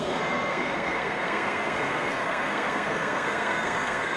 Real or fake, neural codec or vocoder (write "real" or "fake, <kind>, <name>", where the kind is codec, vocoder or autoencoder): fake, codec, SNAC